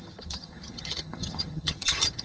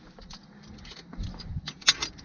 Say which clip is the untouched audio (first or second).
second